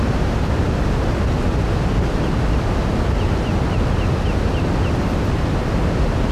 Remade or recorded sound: recorded